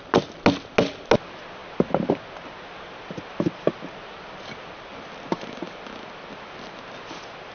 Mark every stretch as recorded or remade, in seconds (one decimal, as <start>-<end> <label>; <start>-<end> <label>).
0.0-7.5 recorded